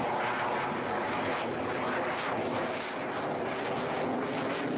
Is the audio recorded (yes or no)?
yes